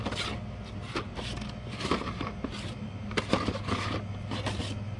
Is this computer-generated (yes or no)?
no